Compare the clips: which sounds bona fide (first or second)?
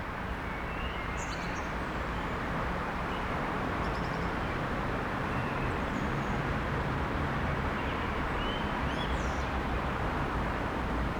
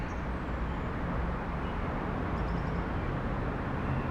second